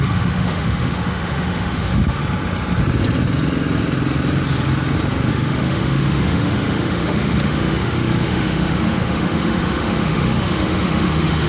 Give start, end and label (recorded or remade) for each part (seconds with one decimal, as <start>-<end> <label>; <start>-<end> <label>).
0.0-2.2 remade; 2.2-5.3 recorded; 5.3-11.5 remade